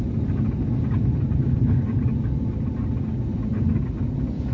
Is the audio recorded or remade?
recorded